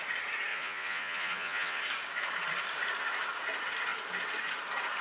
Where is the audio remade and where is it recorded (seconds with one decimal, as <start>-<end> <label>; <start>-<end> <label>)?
0.0-0.5 recorded; 0.5-1.8 remade; 1.8-5.0 recorded